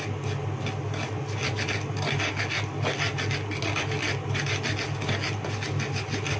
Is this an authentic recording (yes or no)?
yes